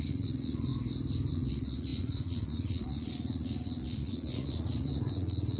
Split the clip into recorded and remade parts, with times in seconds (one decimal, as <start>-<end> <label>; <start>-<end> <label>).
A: 0.0-0.7 remade; 0.7-1.3 recorded; 1.3-5.6 remade

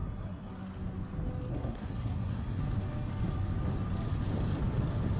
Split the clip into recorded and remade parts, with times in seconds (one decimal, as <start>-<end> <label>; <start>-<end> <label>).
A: 0.0-0.5 remade; 0.5-1.5 recorded; 1.5-2.6 remade; 2.6-5.2 recorded

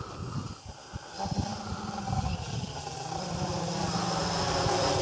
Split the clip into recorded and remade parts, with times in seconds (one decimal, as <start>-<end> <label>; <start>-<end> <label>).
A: 0.0-5.0 recorded

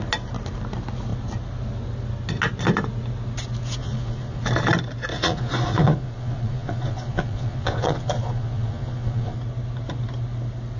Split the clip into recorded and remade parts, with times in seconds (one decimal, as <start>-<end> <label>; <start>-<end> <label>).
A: 0.0-3.8 recorded; 3.8-4.4 remade; 4.4-5.1 recorded; 5.1-9.4 remade; 9.4-10.8 recorded

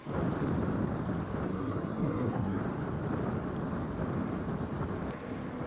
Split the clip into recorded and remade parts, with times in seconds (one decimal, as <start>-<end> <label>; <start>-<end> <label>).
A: 0.0-1.5 recorded; 1.5-2.6 remade; 2.6-5.7 recorded

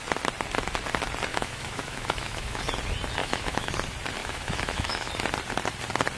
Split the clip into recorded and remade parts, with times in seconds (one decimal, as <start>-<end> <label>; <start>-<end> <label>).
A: 0.0-1.3 recorded; 1.3-2.6 remade; 2.6-3.2 recorded; 3.2-3.7 remade; 3.7-4.2 recorded; 4.2-5.1 remade; 5.1-6.2 recorded

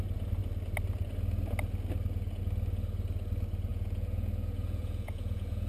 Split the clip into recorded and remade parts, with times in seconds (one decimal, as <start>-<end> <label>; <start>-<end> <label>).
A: 0.0-3.7 recorded; 3.7-5.7 remade

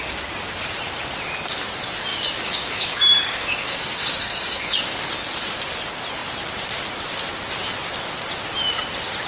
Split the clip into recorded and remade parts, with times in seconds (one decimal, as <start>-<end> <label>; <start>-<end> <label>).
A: 0.0-2.1 recorded; 2.1-4.8 remade; 4.8-9.3 recorded